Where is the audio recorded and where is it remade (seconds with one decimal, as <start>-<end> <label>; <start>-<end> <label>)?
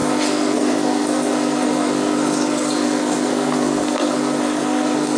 0.0-5.2 remade